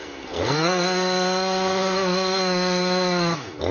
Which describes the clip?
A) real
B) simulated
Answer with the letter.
B